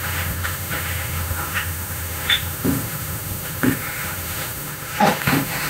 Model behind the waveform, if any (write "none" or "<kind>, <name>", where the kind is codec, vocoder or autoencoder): autoencoder, DAC-VAE